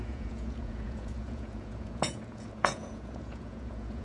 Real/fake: fake